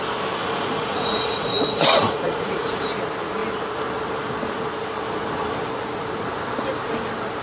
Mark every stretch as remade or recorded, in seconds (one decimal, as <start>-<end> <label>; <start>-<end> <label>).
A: 0.0-0.4 recorded; 0.4-2.9 remade; 2.9-7.4 recorded